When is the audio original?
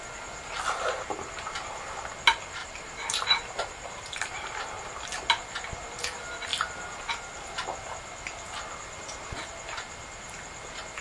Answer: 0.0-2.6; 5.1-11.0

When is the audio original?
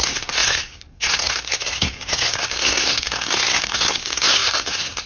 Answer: none